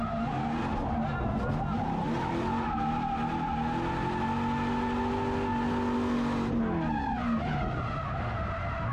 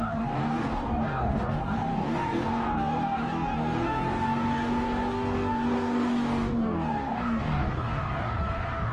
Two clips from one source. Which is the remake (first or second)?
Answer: second